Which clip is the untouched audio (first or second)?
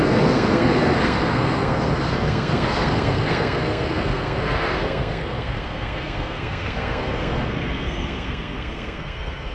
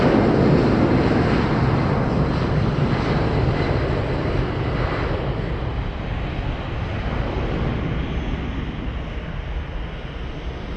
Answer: second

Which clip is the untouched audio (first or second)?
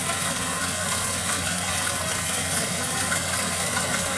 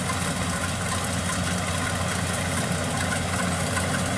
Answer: second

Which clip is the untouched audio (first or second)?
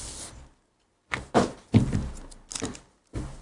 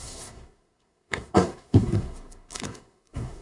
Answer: first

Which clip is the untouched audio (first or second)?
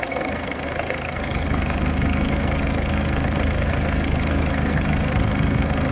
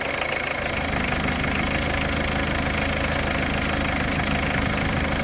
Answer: second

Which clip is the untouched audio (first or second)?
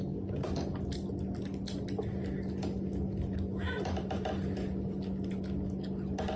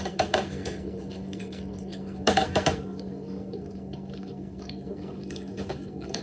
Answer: first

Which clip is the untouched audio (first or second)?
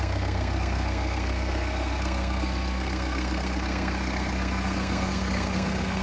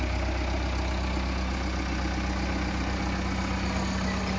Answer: second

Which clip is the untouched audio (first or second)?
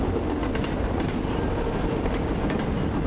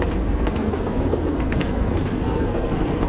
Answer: first